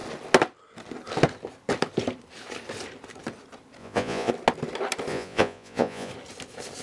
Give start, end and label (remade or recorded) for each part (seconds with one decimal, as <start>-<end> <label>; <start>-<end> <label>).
0.0-3.8 recorded; 3.8-4.3 remade; 4.3-5.1 recorded; 5.1-6.1 remade; 6.1-6.8 recorded